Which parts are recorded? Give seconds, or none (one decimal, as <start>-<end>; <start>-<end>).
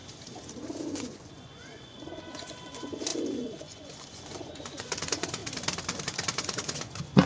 0.0-0.9; 5.4-6.0